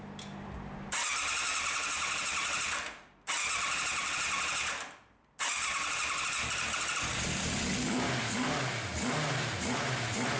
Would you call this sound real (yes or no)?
yes